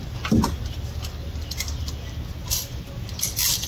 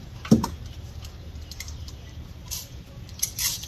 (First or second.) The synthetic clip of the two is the second